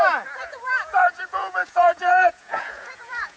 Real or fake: fake